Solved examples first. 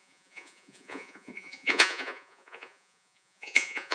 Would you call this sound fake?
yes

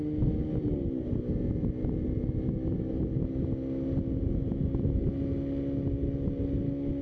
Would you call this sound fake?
no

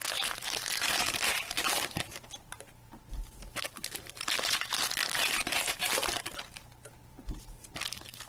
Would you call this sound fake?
yes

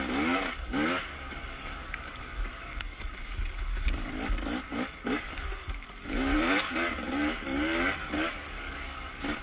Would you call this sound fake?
yes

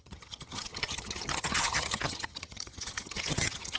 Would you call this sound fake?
yes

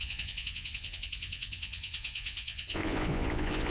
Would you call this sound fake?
yes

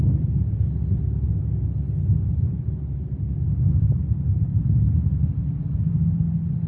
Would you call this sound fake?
no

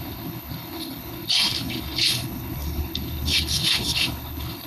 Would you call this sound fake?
yes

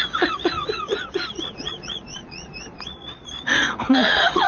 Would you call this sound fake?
yes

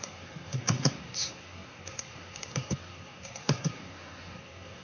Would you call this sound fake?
yes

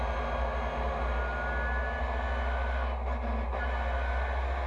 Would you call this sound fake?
no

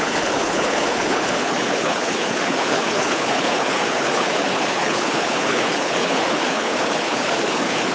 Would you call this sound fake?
yes